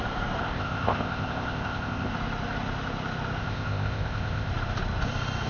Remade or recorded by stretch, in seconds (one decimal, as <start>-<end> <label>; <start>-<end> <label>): 0.0-0.4 recorded; 0.4-2.1 remade; 2.1-3.4 recorded; 3.4-4.5 remade; 4.5-5.5 recorded